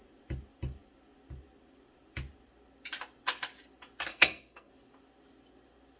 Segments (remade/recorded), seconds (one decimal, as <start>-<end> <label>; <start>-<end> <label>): 0.0-4.1 recorded; 4.1-4.7 remade; 4.7-6.0 recorded